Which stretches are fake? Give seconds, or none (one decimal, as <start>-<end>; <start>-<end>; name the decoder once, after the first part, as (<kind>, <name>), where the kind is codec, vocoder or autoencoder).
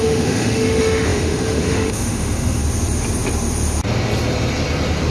0.0-2.6 (autoencoder, DAC-VAE)